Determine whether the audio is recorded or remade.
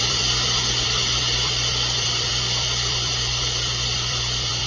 remade